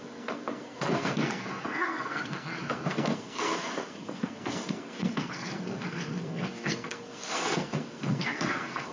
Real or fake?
fake